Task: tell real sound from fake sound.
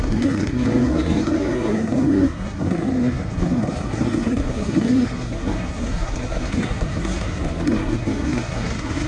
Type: fake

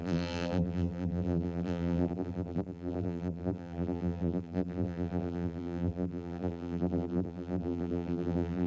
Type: fake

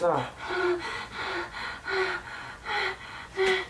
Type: fake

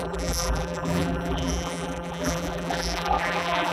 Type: fake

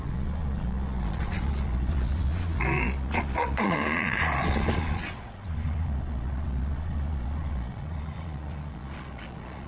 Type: fake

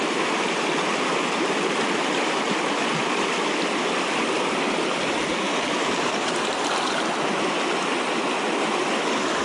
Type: real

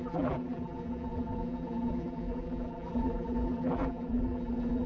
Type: fake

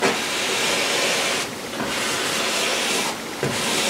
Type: real